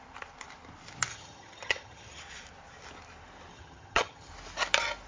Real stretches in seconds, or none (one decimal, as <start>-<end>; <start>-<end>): 0.0-1.1; 2.2-3.5; 4.3-5.1